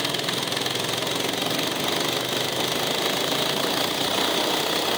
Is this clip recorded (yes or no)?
yes